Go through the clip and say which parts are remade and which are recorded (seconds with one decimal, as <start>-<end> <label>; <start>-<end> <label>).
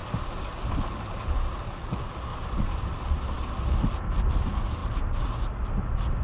0.0-2.3 recorded; 2.3-3.0 remade; 3.0-4.8 recorded; 4.8-5.4 remade; 5.4-6.2 recorded